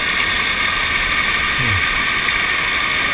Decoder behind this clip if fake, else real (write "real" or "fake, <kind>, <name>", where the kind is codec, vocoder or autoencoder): real